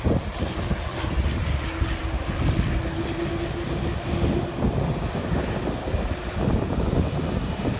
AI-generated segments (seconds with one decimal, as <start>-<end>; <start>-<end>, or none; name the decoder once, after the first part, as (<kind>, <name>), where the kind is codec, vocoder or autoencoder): none